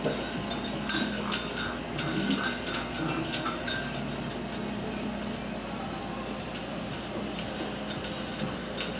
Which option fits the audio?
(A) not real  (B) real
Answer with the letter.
B